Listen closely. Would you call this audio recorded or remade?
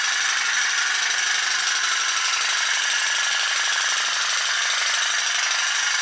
recorded